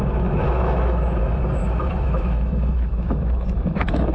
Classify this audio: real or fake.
fake